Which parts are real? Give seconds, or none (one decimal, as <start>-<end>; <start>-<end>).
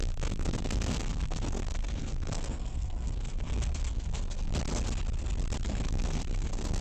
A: 4.5-5.6